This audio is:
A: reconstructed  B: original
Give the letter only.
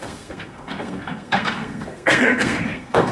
A